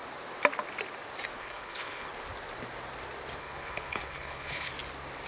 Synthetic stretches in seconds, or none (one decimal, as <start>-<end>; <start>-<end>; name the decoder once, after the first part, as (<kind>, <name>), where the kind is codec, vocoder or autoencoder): 1.4-2.1 (codec, HILCodec); 3.4-4.7

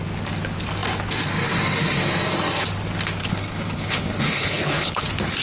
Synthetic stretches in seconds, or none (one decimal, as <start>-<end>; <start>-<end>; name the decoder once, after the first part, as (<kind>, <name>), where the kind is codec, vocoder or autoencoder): 3.2-5.0 (codec, HILCodec)

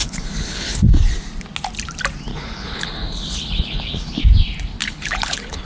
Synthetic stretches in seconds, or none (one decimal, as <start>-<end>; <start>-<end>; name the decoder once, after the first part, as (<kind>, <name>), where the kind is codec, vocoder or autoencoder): 0.0-0.9 (codec, HILCodec); 2.3-4.2; 4.8-5.6

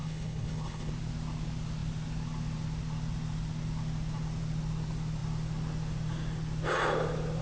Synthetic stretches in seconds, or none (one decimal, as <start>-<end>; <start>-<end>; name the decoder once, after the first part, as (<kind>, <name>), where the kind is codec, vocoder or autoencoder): 0.0-0.9 (codec, HILCodec)